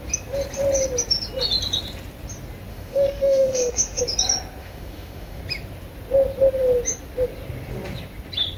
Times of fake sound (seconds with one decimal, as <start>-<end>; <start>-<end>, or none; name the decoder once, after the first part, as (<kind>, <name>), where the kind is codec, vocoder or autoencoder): 2.7-4.0 (autoencoder, DAC-VAE); 4.6-5.4